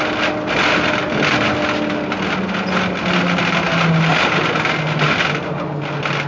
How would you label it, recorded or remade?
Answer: recorded